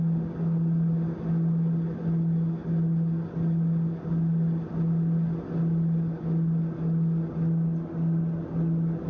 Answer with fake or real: real